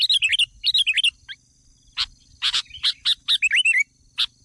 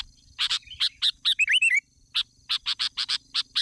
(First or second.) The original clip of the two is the first